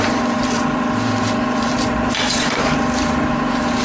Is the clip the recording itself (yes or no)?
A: no